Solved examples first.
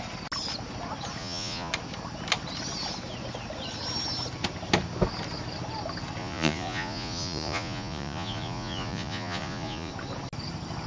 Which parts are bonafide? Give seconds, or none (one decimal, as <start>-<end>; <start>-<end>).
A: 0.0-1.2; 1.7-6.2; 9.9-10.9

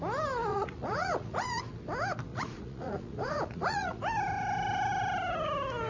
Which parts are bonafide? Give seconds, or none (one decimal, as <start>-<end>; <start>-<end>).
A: 0.0-0.5; 1.6-2.3; 4.0-5.9

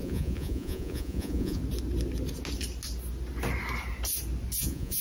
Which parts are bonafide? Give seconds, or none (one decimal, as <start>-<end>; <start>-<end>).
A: 1.6-4.6